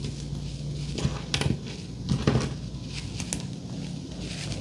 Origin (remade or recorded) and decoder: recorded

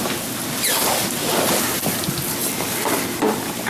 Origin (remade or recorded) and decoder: recorded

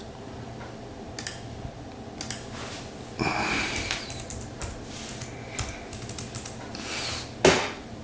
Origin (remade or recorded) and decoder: recorded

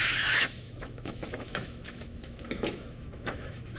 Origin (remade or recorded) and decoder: remade, autoencoder, DAC-VAE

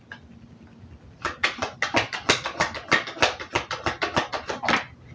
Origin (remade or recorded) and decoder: recorded